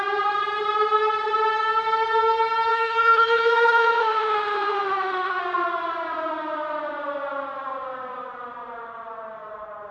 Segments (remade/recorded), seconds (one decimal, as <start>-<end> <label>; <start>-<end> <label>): 0.0-2.7 recorded; 2.7-5.4 remade; 5.4-9.9 recorded